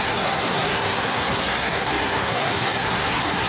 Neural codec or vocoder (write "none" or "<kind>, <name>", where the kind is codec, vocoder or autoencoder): codec, SNAC